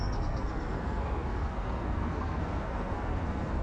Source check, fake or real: fake